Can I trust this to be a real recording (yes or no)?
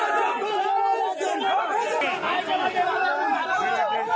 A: yes